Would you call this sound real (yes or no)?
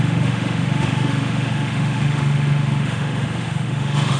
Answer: no